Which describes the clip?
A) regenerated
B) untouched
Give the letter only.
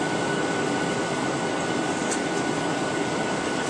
B